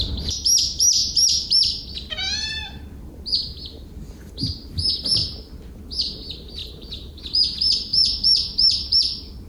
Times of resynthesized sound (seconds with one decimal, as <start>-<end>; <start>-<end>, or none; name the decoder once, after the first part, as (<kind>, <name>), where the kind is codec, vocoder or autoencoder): 6.6-7.2 (vocoder, BigVGAN v2)